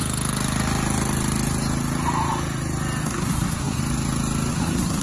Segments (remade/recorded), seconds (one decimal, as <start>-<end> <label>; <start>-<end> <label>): 0.0-3.0 recorded; 3.0-3.8 remade; 3.8-4.5 recorded; 4.5-5.0 remade